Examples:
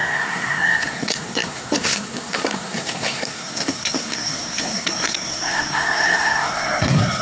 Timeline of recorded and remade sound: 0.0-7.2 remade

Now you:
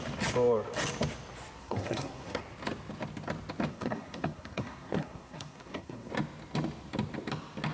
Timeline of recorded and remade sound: 0.0-1.6 recorded; 1.6-2.4 remade; 2.4-3.7 recorded; 3.7-6.1 remade; 6.1-7.7 recorded

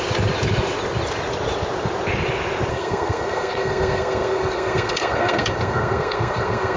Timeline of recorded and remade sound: 0.0-2.7 recorded; 2.7-6.8 remade

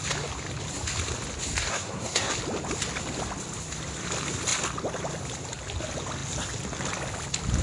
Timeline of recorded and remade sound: 0.0-1.7 recorded; 1.7-2.3 remade; 2.3-7.6 recorded

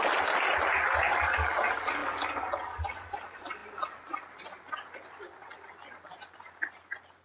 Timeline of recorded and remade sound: 0.0-7.2 recorded

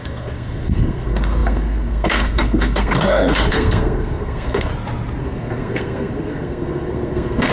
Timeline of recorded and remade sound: 0.0-4.7 remade; 4.7-5.2 recorded; 5.2-7.5 remade

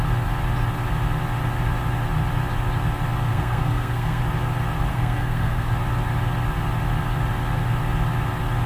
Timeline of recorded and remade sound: 0.0-3.3 recorded; 3.3-4.2 remade; 4.2-4.9 recorded; 4.9-5.7 remade; 5.7-8.7 recorded

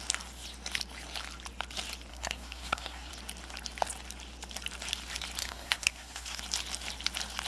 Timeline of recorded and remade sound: 0.0-2.1 recorded; 2.1-3.1 remade; 3.1-5.4 recorded; 5.4-6.4 remade; 6.4-7.5 recorded